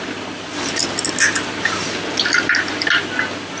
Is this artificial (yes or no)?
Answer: no